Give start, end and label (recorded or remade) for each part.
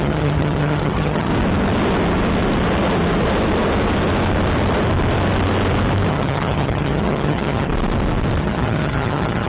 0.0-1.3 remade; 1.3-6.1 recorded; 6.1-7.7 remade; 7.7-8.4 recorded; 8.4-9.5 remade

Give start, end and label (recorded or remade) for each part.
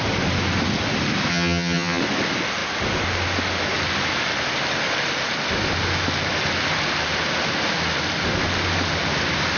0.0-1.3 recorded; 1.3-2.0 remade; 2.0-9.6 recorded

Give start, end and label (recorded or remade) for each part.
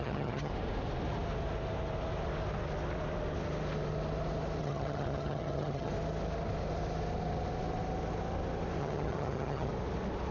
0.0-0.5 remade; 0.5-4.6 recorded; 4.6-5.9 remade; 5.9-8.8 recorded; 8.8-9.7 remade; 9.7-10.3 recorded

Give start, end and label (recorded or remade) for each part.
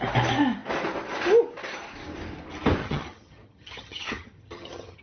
0.0-2.8 recorded; 2.8-5.0 remade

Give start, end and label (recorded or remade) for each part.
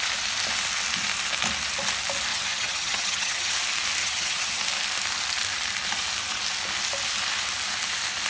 0.0-2.3 recorded; 2.3-3.5 remade; 3.5-4.0 recorded; 4.0-4.6 remade; 4.6-8.3 recorded